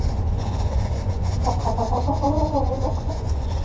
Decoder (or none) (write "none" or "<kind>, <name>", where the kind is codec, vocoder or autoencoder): vocoder, Vocos